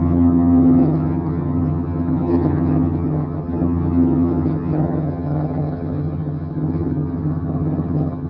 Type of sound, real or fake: fake